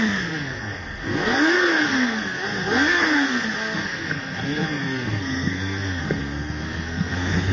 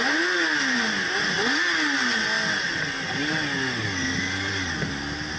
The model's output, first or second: first